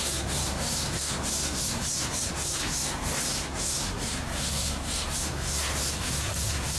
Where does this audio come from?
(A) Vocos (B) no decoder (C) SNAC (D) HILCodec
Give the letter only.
C